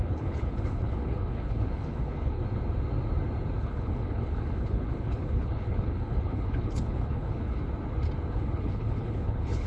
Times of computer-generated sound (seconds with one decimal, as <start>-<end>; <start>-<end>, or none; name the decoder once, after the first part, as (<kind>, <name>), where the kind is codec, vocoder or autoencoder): 0.0-2.4 (codec, HILCodec); 3.6-7.6; 8.3-9.7